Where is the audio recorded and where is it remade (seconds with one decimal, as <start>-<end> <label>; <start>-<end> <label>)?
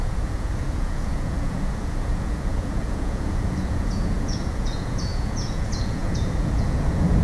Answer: 0.0-7.2 remade